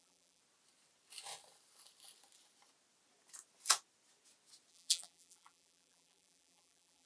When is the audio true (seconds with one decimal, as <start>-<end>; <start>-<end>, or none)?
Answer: 0.4-4.7